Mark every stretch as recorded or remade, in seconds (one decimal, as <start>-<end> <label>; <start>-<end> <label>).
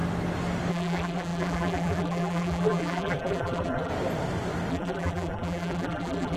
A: 0.0-0.7 recorded; 0.7-3.9 remade; 3.9-4.7 recorded; 4.7-6.4 remade